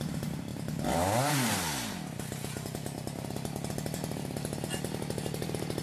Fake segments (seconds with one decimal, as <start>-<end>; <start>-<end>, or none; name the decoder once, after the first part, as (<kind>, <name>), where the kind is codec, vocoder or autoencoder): none